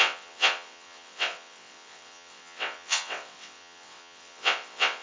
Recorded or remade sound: remade